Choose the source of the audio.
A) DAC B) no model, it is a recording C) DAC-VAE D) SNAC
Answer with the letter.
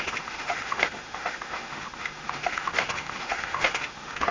C